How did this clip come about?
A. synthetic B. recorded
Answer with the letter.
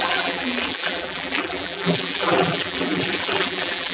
A